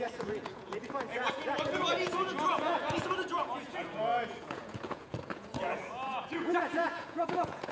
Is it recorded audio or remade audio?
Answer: remade